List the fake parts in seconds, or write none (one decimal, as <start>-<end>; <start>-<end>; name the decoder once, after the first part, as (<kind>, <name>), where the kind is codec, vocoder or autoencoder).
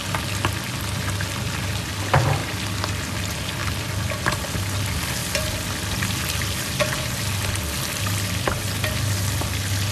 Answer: 3.6-4.4 (vocoder, BigVGAN v2); 5.2-7.6